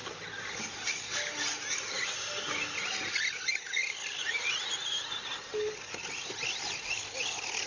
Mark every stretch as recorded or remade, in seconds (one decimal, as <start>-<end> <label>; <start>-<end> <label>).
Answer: 0.0-7.7 recorded